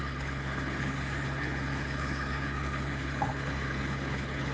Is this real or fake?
fake